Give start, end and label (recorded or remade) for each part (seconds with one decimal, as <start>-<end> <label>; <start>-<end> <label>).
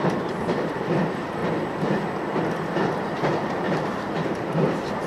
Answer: 0.0-1.4 remade; 1.4-2.8 recorded; 2.8-5.1 remade